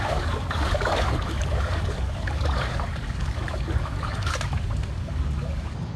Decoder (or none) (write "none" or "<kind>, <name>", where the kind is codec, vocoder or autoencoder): codec, DAC